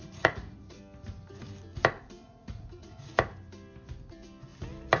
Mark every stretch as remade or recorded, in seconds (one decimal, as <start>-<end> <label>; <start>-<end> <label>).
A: 0.0-0.8 remade; 0.8-2.2 recorded; 2.2-3.1 remade; 3.1-5.0 recorded